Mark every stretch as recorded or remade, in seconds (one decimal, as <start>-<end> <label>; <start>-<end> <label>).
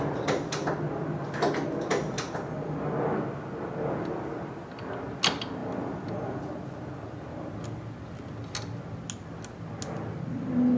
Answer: 0.0-10.8 recorded